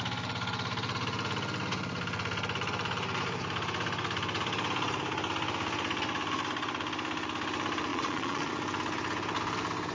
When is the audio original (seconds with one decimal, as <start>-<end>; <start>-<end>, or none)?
0.0-7.9; 8.5-9.9